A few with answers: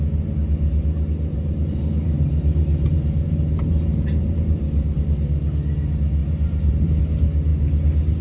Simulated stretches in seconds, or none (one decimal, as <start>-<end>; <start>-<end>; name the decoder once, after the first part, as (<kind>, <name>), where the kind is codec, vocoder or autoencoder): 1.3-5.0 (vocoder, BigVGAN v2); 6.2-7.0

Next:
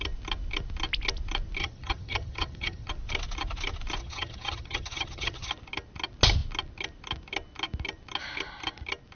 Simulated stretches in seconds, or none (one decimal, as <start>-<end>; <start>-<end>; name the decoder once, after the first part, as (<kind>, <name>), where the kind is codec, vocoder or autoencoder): 1.6-2.9 (vocoder, HiFi-GAN); 4.0-5.5

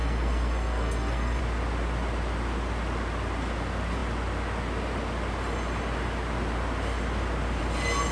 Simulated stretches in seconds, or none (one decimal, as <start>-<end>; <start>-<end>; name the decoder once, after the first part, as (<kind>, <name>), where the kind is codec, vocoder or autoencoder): 0.0-1.4 (codec, SNAC)

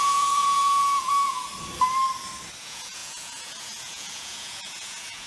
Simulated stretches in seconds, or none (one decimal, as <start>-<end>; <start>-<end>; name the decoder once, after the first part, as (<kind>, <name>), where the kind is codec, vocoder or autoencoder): 0.0-1.5 (vocoder, Vocos); 2.6-5.3